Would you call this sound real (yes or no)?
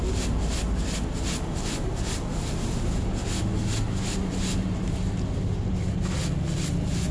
yes